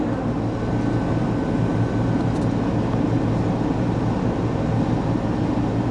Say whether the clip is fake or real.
real